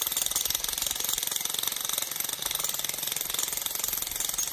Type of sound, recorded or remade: recorded